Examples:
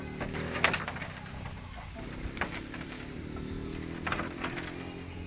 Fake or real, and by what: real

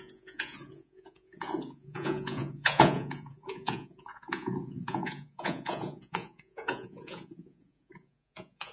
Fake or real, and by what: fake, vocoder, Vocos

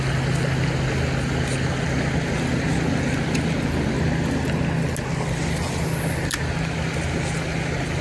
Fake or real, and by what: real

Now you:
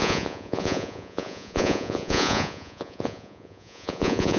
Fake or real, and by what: fake, vocoder, Vocos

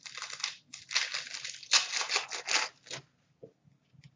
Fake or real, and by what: real